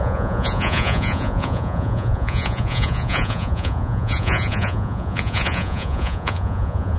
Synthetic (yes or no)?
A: yes